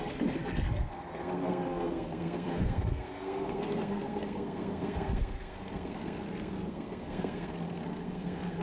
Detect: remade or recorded remade